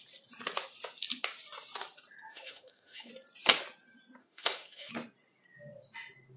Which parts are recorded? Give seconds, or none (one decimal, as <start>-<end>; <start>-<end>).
0.0-2.3; 3.1-4.2; 4.9-6.4